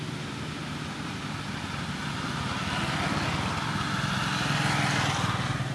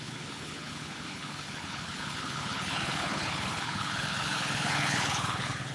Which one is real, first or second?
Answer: first